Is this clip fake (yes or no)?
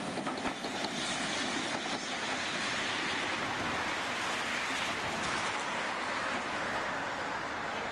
no